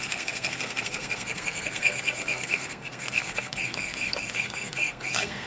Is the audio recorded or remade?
remade